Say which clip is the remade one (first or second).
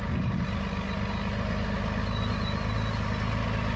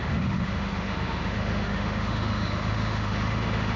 second